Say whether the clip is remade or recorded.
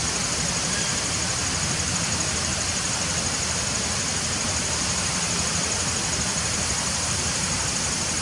remade